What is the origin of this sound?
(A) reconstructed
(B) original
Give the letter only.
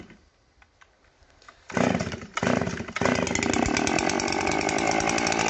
B